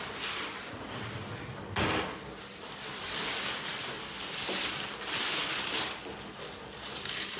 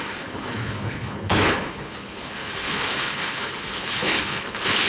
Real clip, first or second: first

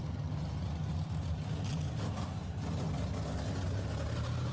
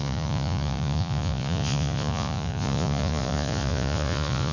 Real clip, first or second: first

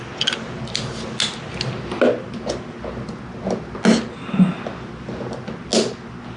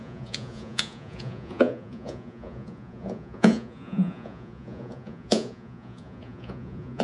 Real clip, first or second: first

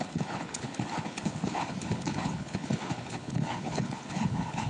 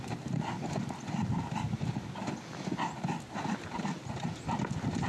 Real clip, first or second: second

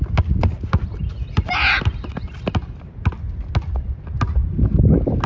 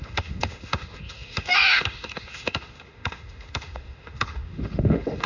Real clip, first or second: first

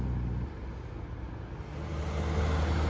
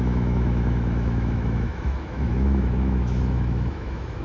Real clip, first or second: first